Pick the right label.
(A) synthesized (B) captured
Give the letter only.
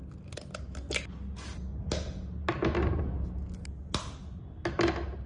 B